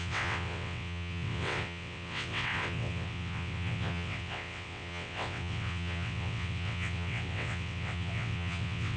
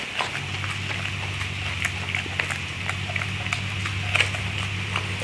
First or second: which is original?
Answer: second